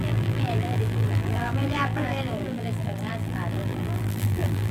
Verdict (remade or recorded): remade